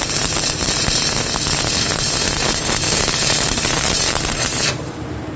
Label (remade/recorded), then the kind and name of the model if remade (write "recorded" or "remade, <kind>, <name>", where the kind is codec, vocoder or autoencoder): remade, vocoder, BigVGAN v2